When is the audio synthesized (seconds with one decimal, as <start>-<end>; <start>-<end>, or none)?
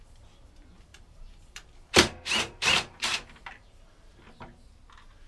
0.9-4.1